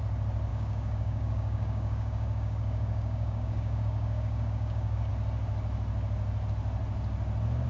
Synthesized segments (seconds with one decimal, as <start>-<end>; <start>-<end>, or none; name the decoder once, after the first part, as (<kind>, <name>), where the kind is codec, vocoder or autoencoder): 0.5-5.1 (codec, DAC)